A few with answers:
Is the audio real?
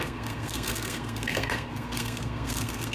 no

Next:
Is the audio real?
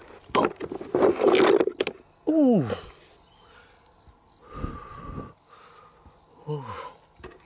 yes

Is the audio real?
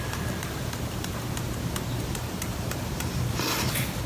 yes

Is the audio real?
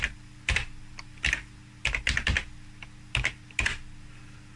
yes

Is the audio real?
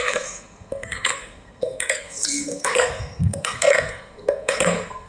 no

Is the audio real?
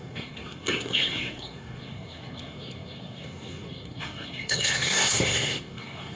no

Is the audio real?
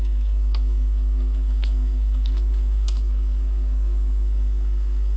no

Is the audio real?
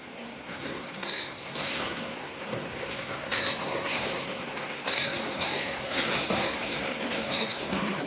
no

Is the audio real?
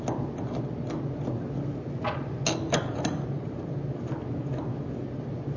yes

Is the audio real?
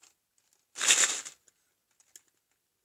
yes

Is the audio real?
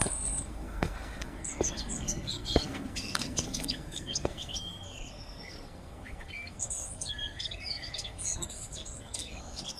no